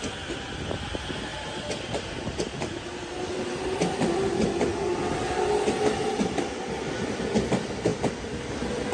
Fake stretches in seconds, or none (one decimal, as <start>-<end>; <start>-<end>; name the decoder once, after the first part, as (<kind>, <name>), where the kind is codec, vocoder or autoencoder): none